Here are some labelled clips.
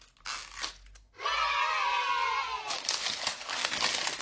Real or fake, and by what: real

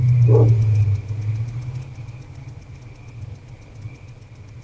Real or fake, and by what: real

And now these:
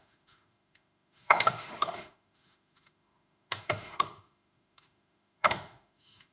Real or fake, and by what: fake, autoencoder, DAC-VAE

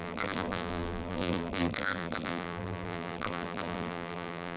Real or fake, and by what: fake, vocoder, BigVGAN v2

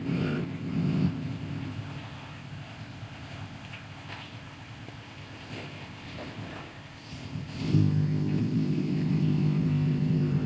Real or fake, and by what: fake, codec, ZipCodec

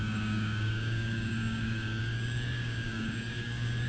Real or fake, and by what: fake, codec, DAC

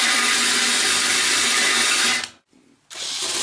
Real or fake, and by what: real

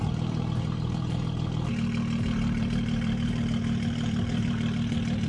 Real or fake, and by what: fake, vocoder, BigVGAN v2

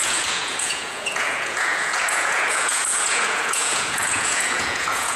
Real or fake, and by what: fake, vocoder, Vocos